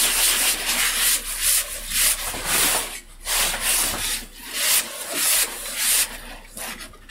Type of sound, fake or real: real